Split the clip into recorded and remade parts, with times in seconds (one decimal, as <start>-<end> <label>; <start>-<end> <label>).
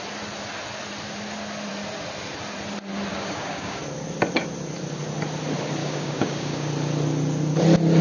0.0-3.1 recorded; 3.1-3.8 remade; 3.8-5.8 recorded; 5.8-6.7 remade; 6.7-8.0 recorded